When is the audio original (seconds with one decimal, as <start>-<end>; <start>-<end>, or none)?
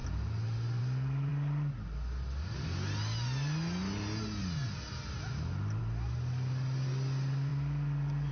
0.0-8.3